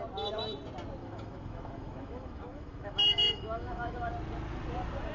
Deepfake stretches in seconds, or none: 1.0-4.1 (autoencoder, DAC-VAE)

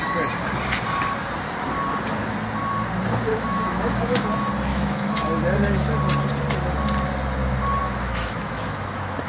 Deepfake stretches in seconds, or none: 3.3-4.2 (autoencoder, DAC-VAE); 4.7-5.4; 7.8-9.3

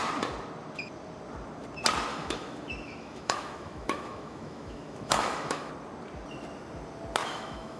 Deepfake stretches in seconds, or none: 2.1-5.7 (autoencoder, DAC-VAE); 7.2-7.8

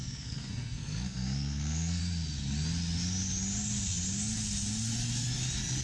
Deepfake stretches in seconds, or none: 0.0-2.0 (codec, SNAC)

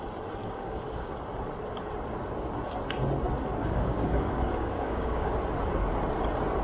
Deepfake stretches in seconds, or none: 0.4-1.1 (codec, DAC); 3.6-5.4